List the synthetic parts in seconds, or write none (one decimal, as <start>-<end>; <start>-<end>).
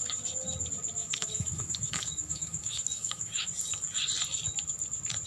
1.0-3.5